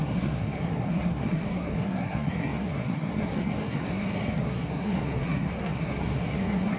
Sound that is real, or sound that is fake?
fake